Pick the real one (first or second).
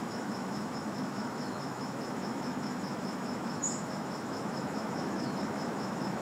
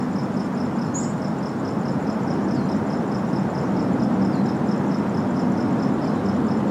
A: second